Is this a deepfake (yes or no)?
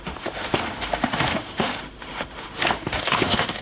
yes